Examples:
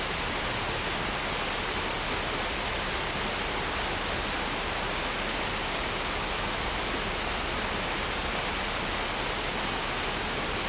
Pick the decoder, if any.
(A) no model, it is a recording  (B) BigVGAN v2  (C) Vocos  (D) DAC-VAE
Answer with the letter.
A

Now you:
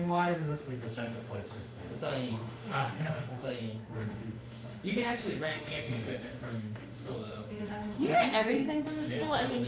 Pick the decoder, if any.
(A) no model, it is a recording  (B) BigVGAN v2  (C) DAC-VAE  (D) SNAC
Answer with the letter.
C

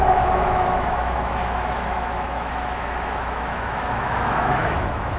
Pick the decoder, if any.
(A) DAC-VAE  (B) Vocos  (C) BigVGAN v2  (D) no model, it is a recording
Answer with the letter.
A